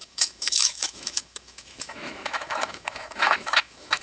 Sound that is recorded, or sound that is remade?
remade